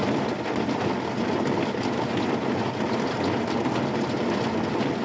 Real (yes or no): yes